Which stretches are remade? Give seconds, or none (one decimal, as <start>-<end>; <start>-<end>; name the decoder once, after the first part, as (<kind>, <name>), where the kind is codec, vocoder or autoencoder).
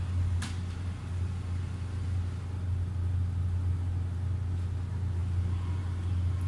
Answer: none